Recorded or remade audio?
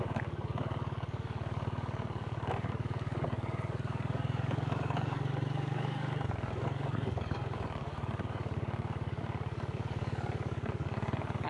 remade